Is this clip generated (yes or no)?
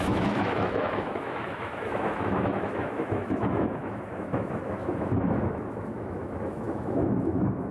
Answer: yes